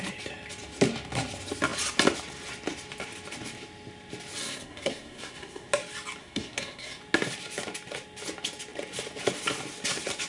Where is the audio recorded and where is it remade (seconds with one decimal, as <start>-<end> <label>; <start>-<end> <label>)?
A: 0.0-4.4 recorded; 4.4-5.7 remade; 5.7-6.2 recorded; 6.2-7.0 remade; 7.0-10.3 recorded